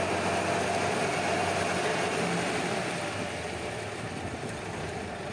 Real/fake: real